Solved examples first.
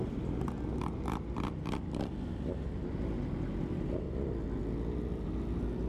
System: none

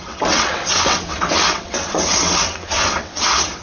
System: vocoder, WaveNeXt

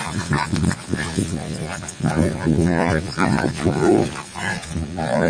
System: vocoder, Vocos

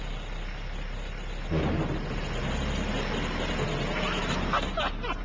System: none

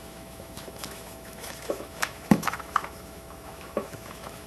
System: autoencoder, DAC-VAE